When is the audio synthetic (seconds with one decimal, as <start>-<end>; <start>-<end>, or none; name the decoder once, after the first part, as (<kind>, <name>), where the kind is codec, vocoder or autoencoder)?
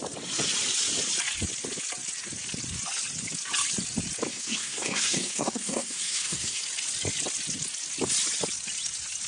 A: 4.3-6.6 (codec, SNAC)